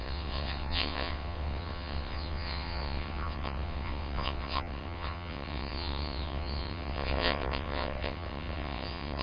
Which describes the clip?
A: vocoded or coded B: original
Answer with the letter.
A